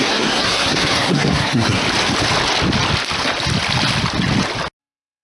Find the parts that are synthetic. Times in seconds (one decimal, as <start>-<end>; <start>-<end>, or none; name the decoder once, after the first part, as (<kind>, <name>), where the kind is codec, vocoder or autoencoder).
0.0-1.8 (codec, SNAC); 4.8-5.2